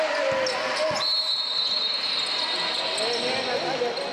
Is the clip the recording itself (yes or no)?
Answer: yes